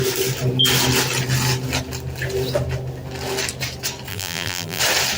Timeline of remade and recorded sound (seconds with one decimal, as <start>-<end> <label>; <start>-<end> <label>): 0.0-4.1 recorded; 4.1-4.8 remade; 4.8-5.2 recorded